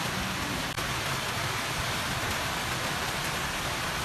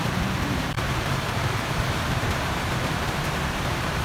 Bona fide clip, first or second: first